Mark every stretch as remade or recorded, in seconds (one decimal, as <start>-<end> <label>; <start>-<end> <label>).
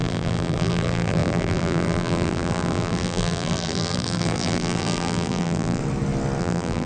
0.0-5.8 remade; 5.8-6.4 recorded; 6.4-6.9 remade